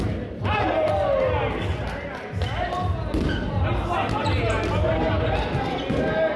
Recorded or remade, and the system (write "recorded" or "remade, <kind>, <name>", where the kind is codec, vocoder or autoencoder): recorded